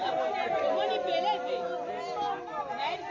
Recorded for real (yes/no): yes